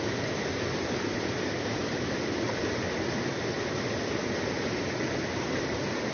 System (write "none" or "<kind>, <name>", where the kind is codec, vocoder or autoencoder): none